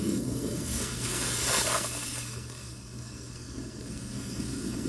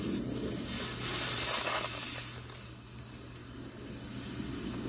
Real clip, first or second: second